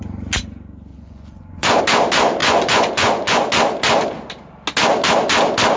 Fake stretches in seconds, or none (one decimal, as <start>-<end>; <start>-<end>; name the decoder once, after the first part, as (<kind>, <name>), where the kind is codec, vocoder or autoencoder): 0.9-1.8 (vocoder, Vocos); 2.4-3.5